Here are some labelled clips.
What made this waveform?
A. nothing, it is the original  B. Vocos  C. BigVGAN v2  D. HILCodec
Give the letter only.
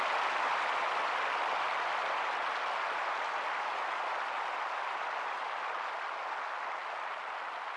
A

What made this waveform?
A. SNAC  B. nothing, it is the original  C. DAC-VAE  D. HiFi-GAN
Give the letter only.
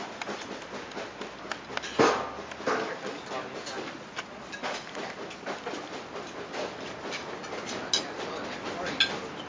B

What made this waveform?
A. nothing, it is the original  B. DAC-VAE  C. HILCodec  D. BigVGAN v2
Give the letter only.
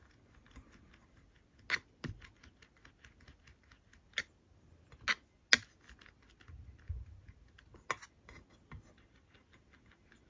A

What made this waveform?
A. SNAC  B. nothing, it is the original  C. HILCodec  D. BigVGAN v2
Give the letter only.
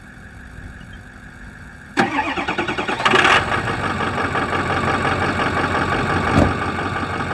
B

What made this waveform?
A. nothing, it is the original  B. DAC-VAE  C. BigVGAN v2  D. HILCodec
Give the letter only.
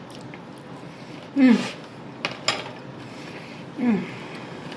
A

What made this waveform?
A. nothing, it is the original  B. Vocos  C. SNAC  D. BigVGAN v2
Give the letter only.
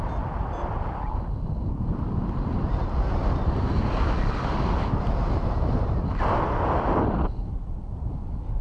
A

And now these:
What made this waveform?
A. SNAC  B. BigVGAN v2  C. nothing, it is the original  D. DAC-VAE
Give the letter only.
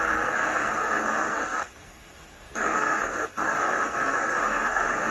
A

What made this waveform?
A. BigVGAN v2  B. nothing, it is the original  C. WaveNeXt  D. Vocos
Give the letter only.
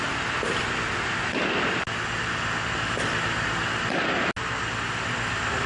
B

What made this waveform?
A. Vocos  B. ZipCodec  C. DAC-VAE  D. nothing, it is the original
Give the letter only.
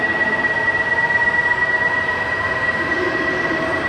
D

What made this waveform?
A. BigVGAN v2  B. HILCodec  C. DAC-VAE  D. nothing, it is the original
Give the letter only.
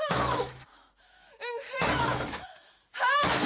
C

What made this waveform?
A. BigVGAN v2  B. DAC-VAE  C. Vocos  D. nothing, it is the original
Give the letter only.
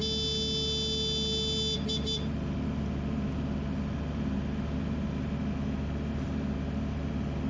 D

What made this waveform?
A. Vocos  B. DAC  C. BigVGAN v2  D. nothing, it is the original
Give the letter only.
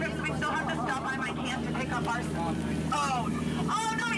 D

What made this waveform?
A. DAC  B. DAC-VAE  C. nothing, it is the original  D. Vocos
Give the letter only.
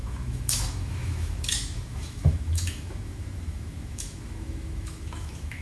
B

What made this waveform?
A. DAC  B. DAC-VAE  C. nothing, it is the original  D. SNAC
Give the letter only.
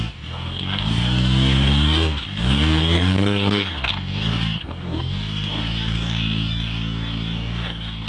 A